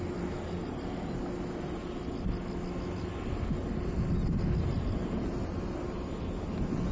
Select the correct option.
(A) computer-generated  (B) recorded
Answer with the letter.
B